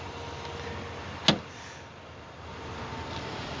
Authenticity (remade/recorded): recorded